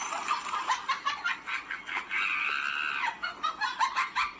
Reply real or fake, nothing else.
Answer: real